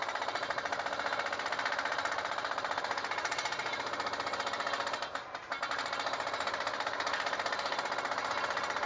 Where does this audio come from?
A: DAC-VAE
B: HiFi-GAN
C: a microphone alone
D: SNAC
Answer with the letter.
C